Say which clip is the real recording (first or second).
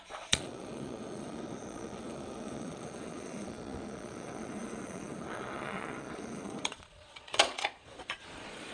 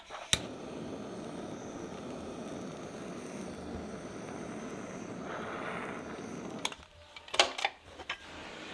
second